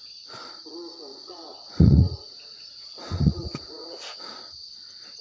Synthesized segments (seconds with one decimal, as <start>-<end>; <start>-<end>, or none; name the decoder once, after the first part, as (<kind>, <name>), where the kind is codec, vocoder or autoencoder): 1.1-4.2 (vocoder, Vocos)